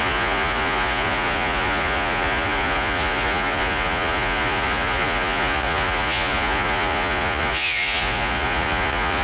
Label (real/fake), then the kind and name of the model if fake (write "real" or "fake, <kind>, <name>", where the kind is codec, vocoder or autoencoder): fake, vocoder, Vocos